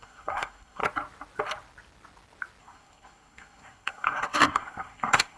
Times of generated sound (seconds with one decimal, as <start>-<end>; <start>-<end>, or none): 0.0-0.8; 2.6-5.4